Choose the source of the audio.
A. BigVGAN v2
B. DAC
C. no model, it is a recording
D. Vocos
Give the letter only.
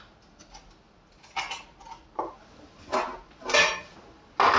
C